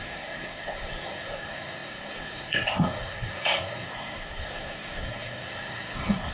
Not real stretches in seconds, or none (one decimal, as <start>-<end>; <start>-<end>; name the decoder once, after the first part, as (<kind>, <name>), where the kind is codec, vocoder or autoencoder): 0.0-6.3 (codec, SNAC)